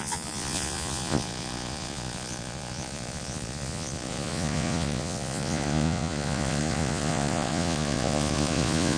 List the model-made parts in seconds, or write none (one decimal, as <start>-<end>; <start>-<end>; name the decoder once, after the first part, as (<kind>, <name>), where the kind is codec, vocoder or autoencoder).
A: 0.0-9.0 (vocoder, Vocos)